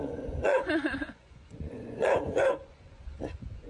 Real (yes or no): no